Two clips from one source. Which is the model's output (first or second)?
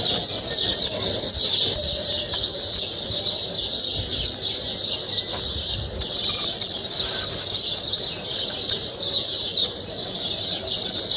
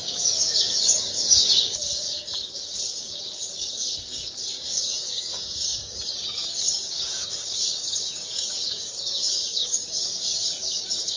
second